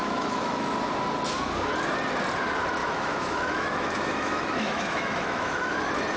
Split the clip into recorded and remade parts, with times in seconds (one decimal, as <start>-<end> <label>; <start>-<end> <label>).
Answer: 0.0-0.7 remade; 0.7-2.8 recorded; 2.8-5.7 remade; 5.7-6.2 recorded